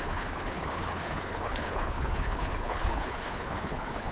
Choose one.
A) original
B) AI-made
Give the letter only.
B